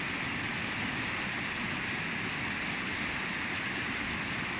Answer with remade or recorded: recorded